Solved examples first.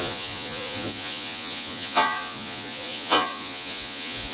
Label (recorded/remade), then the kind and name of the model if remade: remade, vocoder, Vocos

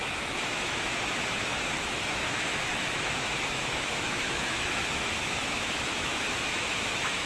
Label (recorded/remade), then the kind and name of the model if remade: remade, autoencoder, DAC-VAE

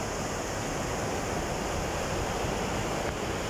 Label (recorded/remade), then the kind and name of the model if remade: recorded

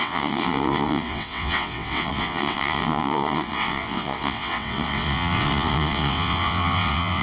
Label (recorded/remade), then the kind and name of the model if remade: remade, vocoder, WaveNeXt